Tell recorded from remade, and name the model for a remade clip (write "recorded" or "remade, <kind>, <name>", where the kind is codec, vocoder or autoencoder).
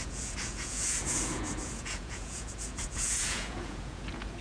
remade, vocoder, Vocos